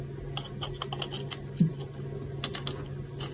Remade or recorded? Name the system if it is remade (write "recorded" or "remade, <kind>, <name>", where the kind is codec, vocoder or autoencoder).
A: recorded